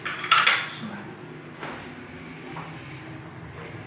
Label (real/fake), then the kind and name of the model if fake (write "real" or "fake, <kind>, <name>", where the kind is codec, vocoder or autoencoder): real